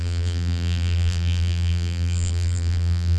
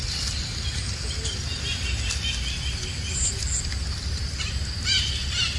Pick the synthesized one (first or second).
first